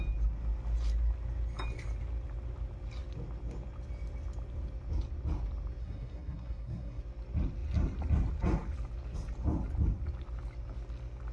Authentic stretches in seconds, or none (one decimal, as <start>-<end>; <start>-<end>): 0.0-5.8; 7.0-11.3